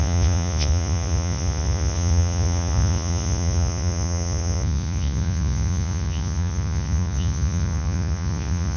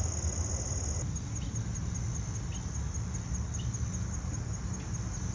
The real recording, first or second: second